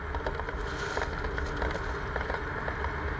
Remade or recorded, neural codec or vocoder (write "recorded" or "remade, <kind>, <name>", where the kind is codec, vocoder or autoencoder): recorded